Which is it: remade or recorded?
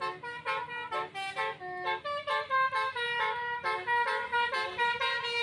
recorded